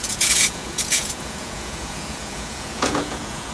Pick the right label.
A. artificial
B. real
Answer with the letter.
A